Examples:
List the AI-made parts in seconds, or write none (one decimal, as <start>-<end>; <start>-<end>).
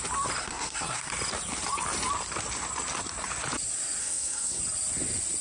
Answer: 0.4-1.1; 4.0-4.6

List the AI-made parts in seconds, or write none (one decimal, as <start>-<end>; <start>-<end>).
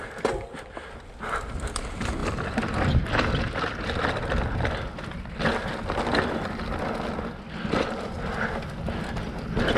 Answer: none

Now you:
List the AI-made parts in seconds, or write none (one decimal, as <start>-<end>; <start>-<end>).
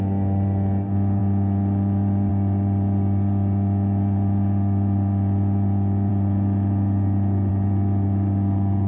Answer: none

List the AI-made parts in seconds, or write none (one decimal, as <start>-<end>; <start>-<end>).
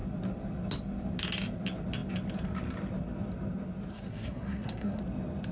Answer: 3.9-5.0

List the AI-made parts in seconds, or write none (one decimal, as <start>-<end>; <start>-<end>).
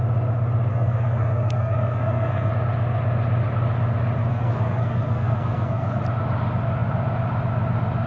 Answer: 0.7-2.5; 4.3-6.0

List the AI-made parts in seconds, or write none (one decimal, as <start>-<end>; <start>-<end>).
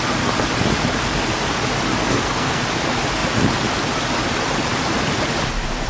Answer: 2.0-2.6